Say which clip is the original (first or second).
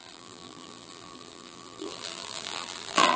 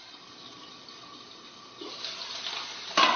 second